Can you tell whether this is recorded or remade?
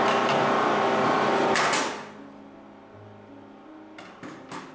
recorded